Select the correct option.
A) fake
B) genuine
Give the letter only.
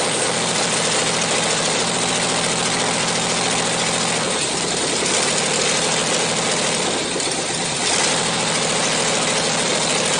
B